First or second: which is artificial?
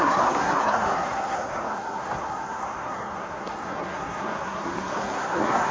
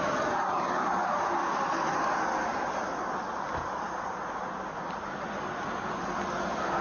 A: first